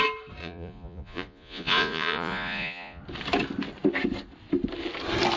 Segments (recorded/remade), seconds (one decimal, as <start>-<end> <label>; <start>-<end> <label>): 0.0-0.4 recorded; 0.4-3.0 remade; 3.0-5.4 recorded